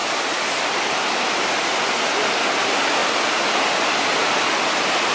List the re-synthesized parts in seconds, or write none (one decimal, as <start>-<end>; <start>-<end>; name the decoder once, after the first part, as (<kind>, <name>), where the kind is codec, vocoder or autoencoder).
none